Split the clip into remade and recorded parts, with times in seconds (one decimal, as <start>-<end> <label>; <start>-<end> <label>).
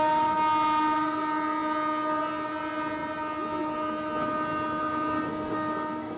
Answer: 0.0-6.2 recorded